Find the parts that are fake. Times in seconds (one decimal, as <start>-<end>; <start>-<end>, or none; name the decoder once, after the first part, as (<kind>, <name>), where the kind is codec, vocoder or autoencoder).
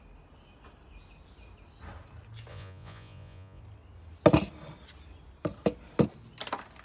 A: 2.5-3.6 (vocoder, Vocos)